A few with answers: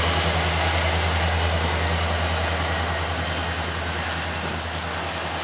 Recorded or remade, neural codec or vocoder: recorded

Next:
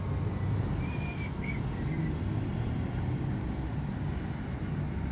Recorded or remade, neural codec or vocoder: recorded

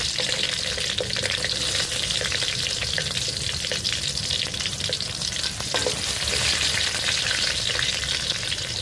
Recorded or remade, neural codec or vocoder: remade, vocoder, BigVGAN v2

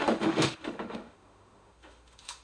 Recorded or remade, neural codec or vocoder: remade, autoencoder, DAC-VAE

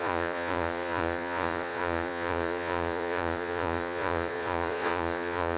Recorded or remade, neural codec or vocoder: remade, vocoder, Vocos